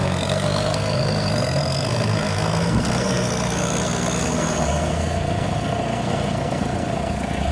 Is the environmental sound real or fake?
fake